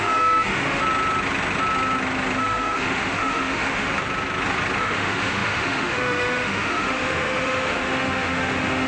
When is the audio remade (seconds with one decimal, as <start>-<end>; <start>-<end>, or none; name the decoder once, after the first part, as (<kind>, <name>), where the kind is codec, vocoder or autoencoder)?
0.0-0.8 (autoencoder, DAC-VAE); 2.4-3.9; 4.8-8.9